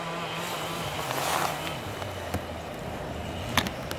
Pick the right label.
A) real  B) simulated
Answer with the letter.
A